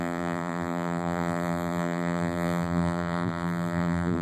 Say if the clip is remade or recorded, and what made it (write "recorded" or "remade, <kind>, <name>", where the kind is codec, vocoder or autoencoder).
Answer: remade, vocoder, BigVGAN v2